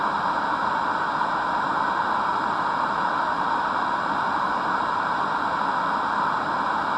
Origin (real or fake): fake